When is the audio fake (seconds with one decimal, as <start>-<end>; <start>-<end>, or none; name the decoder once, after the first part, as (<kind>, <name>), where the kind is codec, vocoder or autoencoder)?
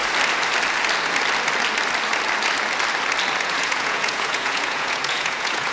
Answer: 3.4-5.7 (vocoder, Vocos)